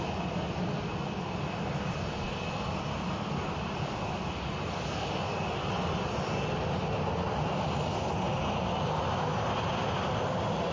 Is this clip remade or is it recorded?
recorded